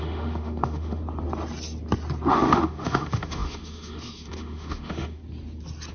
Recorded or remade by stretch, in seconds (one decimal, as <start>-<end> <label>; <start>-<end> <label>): 0.0-1.0 remade; 1.0-2.3 recorded; 2.3-5.2 remade; 5.2-5.9 recorded